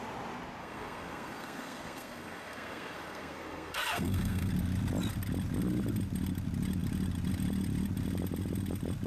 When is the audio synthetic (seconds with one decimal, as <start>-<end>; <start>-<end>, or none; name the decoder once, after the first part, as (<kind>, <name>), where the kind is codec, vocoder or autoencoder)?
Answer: 0.6-4.5 (codec, SNAC)